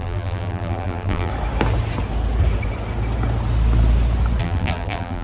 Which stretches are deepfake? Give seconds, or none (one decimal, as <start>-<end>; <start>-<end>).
0.0-1.3; 4.4-5.2